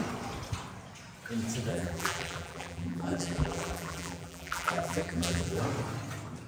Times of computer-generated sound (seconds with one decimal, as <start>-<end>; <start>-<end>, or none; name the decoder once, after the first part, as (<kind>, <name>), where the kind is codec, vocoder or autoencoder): 1.7-5.6 (vocoder, BigVGAN v2)